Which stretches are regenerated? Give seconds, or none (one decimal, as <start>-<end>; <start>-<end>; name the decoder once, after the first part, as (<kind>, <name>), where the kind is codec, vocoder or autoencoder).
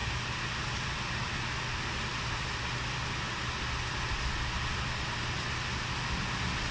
none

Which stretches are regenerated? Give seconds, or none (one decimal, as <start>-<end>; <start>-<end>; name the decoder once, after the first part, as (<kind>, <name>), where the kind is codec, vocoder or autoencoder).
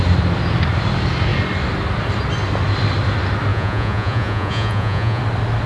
3.5-5.2 (vocoder, Vocos)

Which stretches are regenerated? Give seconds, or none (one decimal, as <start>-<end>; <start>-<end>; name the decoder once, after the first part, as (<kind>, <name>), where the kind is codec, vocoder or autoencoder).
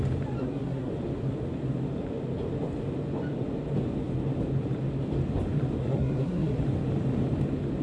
0.4-0.9 (codec, SNAC); 5.8-6.6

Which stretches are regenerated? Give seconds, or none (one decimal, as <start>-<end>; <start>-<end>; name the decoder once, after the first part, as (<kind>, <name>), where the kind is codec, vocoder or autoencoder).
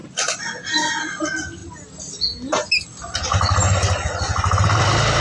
none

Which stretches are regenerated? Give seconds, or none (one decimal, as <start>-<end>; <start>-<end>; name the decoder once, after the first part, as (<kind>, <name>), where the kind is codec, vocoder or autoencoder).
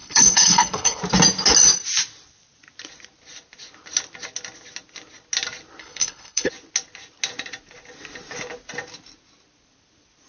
0.0-1.0 (codec, HILCodec); 5.8-6.5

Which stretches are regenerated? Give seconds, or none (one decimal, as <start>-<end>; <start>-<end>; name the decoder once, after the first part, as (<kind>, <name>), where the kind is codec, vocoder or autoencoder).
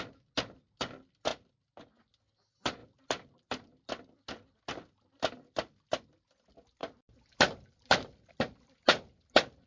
none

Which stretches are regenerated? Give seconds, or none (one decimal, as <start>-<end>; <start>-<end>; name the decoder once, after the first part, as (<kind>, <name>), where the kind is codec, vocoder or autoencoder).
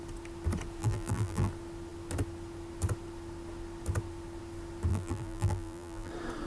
0.8-1.5 (vocoder, BigVGAN v2); 4.9-6.1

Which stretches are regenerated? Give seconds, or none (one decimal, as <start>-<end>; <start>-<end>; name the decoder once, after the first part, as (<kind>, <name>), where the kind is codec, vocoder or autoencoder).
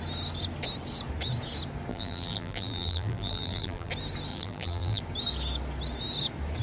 1.9-3.9 (vocoder, BigVGAN v2); 4.3-5.0